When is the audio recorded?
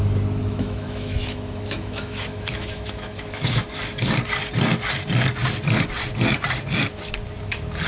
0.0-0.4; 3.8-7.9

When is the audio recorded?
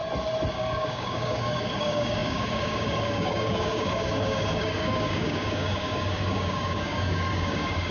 0.0-0.5